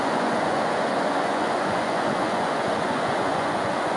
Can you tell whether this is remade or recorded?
remade